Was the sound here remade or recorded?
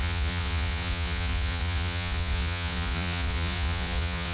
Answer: remade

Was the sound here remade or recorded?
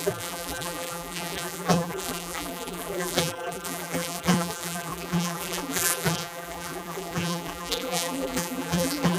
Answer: remade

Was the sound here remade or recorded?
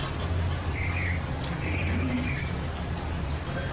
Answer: recorded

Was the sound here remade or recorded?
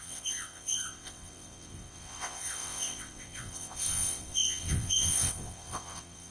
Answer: remade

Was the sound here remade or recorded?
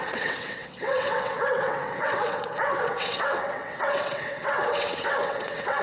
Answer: remade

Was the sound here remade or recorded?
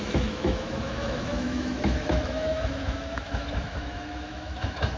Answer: remade